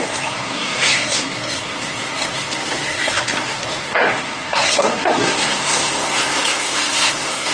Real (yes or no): no